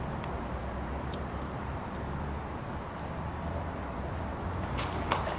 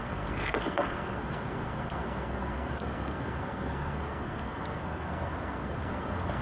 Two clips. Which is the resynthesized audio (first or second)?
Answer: second